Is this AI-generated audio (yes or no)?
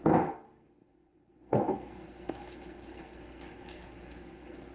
yes